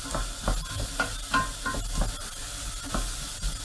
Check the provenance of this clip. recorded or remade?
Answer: recorded